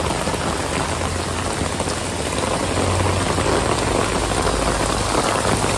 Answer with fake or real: real